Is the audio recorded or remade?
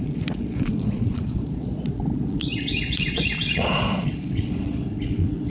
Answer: remade